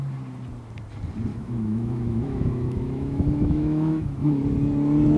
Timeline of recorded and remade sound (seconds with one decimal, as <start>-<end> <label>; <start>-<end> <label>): 0.0-1.3 recorded; 1.3-4.4 remade; 4.4-5.2 recorded